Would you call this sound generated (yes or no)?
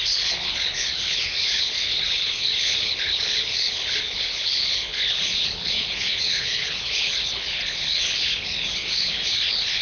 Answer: yes